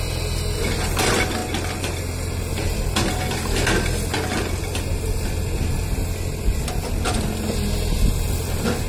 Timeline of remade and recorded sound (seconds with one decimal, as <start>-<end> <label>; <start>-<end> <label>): 0.0-8.9 recorded